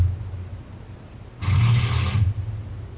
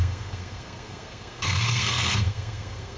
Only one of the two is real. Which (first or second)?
first